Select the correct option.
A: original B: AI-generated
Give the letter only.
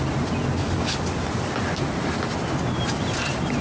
A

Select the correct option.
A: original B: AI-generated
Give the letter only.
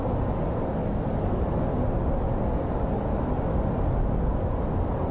A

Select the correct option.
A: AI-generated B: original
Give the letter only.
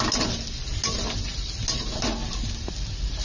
B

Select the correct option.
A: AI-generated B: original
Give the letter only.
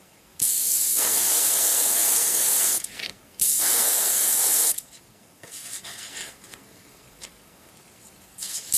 A